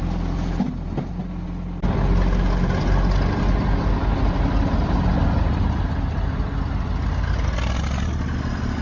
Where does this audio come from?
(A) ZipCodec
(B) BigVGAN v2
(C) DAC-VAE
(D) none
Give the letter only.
D